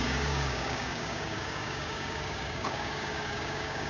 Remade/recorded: remade